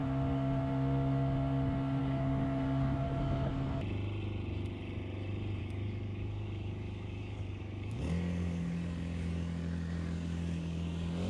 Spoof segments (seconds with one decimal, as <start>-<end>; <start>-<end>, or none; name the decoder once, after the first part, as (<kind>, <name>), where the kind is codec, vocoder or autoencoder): 2.0-3.5 (codec, DAC); 5.6-11.3

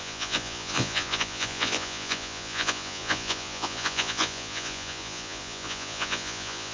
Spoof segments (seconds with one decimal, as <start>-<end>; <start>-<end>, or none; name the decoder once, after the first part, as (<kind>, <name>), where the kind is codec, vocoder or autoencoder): 0.0-6.7 (vocoder, Vocos)

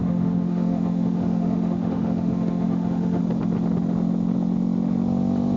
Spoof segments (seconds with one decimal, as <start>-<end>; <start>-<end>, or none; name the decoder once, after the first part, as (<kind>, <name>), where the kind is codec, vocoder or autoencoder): 0.0-3.2 (autoencoder, DAC-VAE)